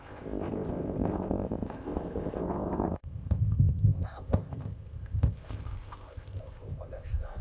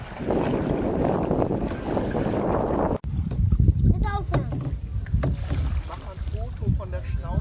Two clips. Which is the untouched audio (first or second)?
second